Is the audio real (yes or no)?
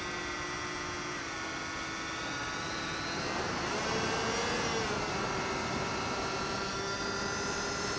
yes